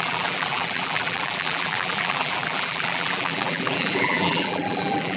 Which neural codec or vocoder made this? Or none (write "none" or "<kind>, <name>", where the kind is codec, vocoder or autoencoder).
vocoder, BigVGAN v2